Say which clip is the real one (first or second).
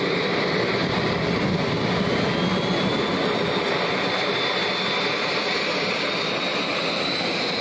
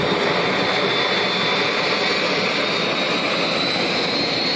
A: second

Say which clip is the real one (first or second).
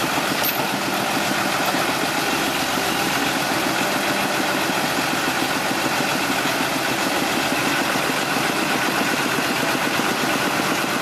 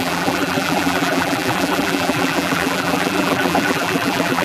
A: first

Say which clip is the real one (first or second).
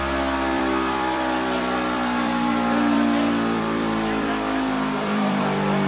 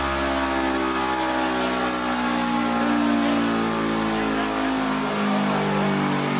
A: second